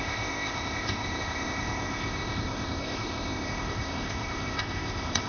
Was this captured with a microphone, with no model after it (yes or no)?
no